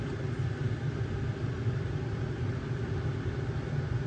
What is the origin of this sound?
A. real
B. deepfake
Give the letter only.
B